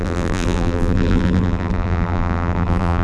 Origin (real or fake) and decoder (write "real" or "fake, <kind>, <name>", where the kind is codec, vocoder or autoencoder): fake, vocoder, BigVGAN v2